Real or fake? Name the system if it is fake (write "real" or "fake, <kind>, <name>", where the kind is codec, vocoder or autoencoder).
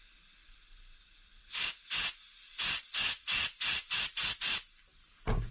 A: real